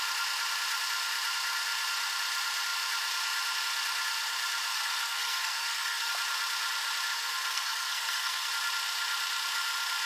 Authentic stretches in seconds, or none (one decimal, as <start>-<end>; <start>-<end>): 0.0-4.7; 6.1-7.1; 8.5-10.1